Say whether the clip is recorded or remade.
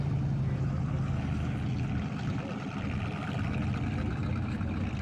recorded